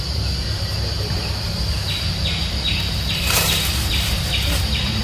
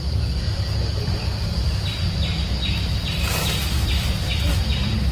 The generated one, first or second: second